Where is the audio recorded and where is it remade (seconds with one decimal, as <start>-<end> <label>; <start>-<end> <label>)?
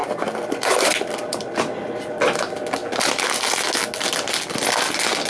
0.0-5.3 recorded